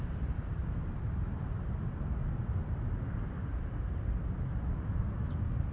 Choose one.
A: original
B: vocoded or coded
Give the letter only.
A